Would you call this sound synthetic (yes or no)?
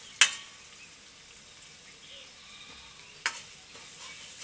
no